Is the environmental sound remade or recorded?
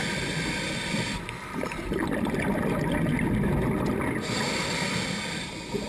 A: recorded